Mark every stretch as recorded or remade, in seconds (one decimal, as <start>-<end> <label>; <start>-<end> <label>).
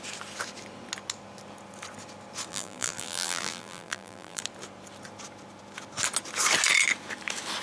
0.0-2.5 recorded; 2.5-4.4 remade; 4.4-7.6 recorded